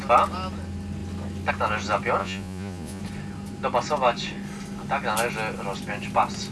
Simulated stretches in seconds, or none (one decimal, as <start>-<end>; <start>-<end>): 2.2-3.0